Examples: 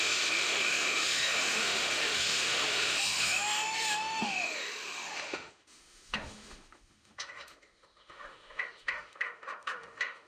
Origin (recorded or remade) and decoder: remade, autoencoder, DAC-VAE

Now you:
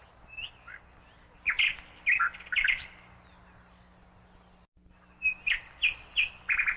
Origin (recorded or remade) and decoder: recorded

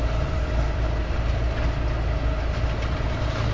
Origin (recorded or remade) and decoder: recorded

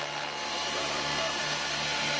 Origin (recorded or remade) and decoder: recorded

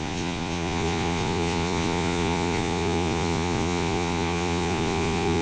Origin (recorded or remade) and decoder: remade, vocoder, Vocos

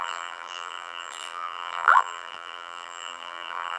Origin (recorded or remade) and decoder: remade, vocoder, BigVGAN v2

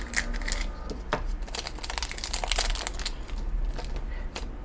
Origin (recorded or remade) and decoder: recorded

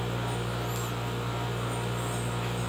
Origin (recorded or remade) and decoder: recorded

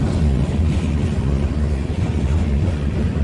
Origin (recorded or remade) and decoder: remade, vocoder, Vocos